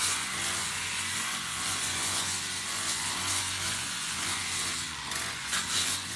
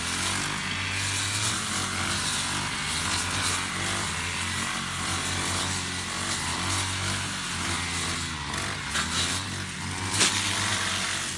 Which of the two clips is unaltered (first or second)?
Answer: second